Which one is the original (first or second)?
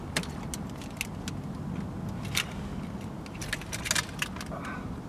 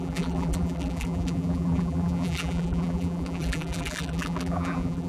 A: first